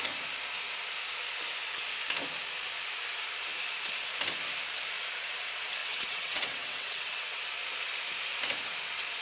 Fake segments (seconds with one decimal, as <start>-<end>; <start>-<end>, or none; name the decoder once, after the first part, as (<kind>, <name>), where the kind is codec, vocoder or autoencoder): 5.8-7.4 (vocoder, WaveNeXt)